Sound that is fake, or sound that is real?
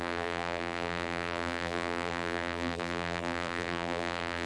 fake